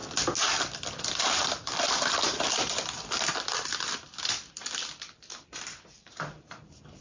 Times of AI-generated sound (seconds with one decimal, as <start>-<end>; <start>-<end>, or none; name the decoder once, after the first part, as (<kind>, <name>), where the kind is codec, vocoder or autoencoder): 1.1-7.0 (vocoder, BigVGAN v2)